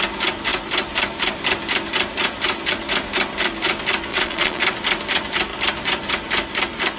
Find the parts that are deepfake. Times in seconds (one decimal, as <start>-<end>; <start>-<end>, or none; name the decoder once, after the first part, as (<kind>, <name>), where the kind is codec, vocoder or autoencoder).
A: 4.1-4.6 (vocoder, Vocos)